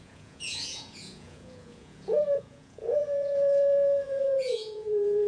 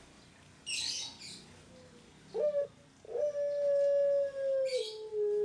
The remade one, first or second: first